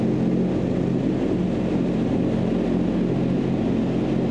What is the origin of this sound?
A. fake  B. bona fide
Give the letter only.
B